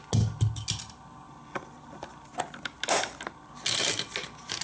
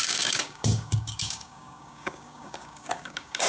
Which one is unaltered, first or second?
first